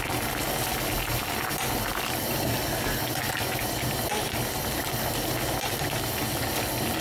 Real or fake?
real